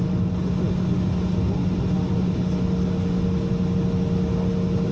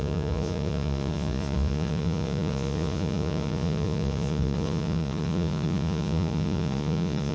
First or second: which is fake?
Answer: second